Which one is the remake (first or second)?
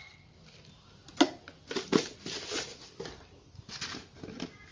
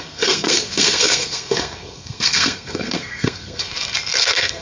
second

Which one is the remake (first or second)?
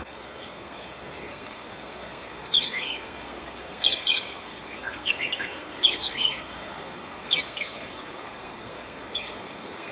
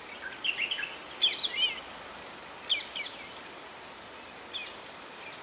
first